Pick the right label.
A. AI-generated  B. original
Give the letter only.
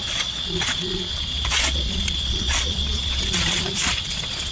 A